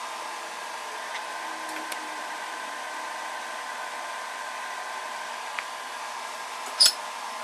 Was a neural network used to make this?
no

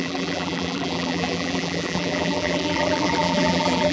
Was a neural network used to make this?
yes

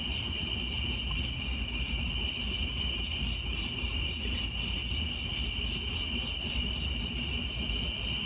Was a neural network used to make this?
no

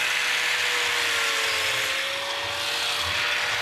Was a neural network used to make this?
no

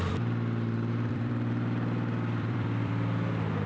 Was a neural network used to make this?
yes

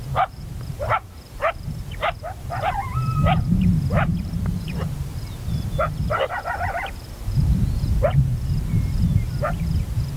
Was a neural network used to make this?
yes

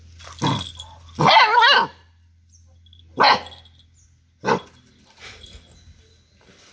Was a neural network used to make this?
no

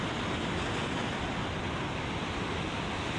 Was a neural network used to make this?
no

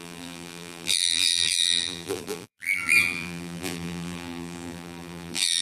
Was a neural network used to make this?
yes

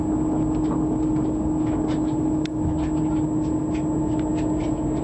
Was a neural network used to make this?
no